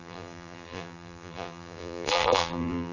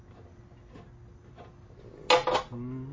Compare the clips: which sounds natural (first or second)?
second